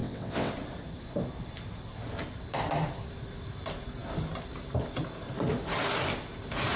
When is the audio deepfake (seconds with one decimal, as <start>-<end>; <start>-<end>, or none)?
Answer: 0.0-0.5